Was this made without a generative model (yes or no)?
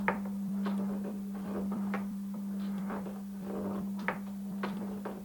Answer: no